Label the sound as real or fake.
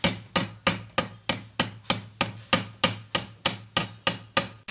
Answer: real